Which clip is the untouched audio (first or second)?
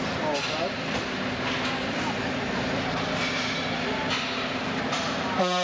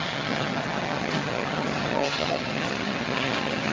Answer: first